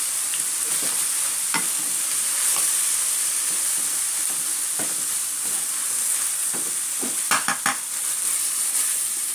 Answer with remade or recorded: remade